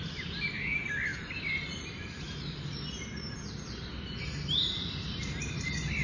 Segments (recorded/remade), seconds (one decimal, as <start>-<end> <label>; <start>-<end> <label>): 0.0-6.0 remade